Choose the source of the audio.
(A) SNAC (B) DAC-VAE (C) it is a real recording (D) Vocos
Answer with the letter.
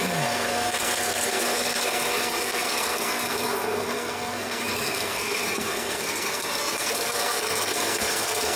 A